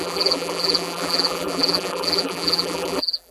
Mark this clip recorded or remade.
remade